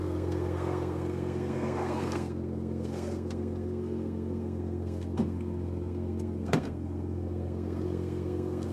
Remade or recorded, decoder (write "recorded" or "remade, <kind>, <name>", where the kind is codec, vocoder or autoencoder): remade, codec, SNAC